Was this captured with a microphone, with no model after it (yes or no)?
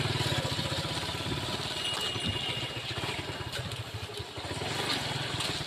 yes